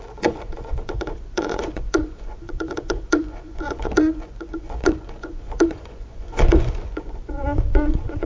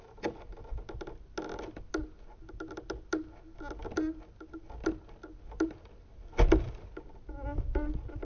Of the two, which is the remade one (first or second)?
first